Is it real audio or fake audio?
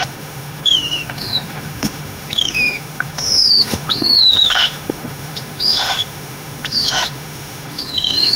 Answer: fake